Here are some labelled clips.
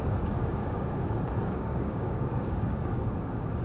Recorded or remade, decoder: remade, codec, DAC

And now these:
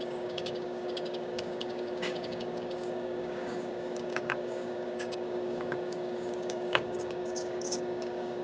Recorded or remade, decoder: remade, codec, DAC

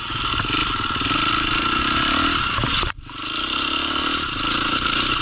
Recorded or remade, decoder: recorded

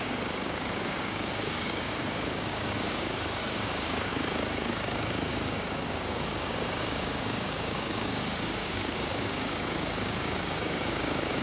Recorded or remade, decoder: remade, codec, DAC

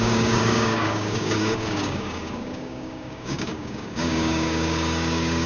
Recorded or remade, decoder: remade, codec, DAC